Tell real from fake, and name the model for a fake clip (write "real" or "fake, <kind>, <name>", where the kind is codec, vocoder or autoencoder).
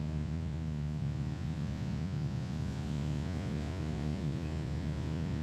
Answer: fake, vocoder, Vocos